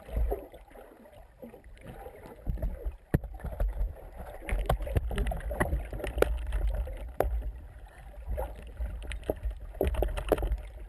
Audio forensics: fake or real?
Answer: fake